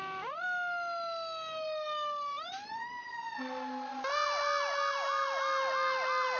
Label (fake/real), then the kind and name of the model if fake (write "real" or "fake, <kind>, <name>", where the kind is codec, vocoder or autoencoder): real